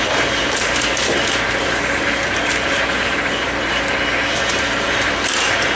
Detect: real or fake fake